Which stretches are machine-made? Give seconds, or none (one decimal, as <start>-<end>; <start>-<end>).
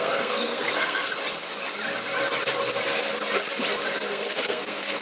0.0-1.1; 4.1-5.0